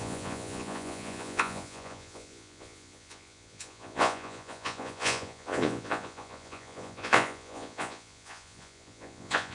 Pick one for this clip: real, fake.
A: fake